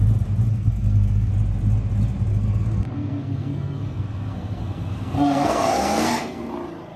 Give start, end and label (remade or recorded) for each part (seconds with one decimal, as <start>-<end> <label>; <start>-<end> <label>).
0.0-0.5 recorded; 0.5-1.3 remade; 1.3-2.3 recorded; 2.3-6.5 remade; 6.5-7.0 recorded